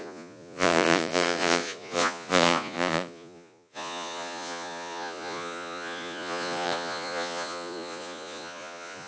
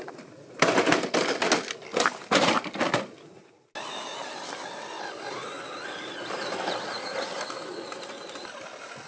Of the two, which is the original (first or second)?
second